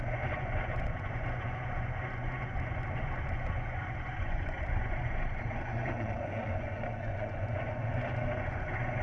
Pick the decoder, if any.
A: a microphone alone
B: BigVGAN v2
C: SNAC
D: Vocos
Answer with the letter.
D